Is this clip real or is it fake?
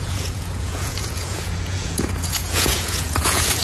fake